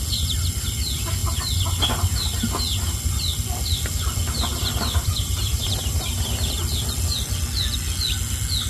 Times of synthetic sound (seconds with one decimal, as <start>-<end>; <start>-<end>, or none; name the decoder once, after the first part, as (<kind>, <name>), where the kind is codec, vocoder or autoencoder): 4.5-6.5 (vocoder, BigVGAN v2)